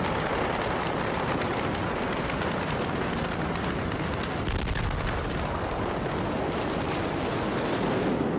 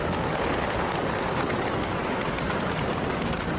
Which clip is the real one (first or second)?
first